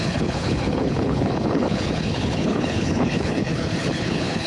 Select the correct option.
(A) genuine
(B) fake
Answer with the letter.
B